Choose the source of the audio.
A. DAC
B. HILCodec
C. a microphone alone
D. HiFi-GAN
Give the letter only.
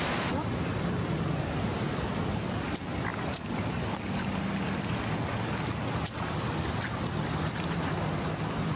C